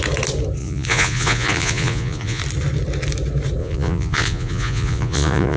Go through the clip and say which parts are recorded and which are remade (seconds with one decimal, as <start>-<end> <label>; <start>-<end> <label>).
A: 0.0-0.6 recorded; 0.6-2.4 remade; 2.4-3.6 recorded; 3.6-5.6 remade